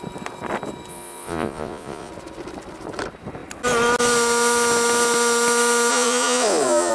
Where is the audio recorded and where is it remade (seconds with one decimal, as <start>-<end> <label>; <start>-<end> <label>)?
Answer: 0.0-0.9 recorded; 0.9-2.1 remade; 2.1-5.9 recorded; 5.9-6.9 remade